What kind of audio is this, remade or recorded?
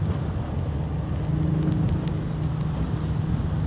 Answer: recorded